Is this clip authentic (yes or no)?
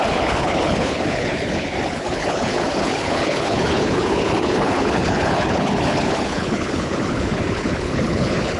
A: no